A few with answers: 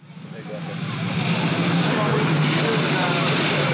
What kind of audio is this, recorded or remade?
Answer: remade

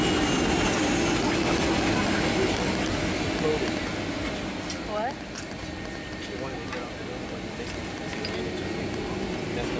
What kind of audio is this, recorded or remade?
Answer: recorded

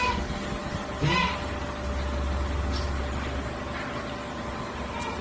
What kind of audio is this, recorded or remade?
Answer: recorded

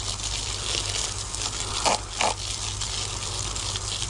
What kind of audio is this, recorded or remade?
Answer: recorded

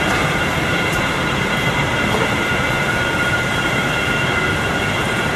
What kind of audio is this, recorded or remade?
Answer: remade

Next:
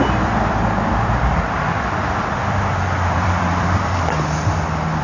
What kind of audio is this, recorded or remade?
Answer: remade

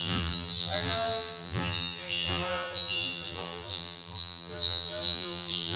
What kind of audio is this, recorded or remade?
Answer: remade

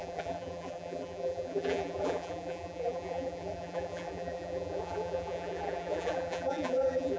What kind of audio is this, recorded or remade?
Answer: remade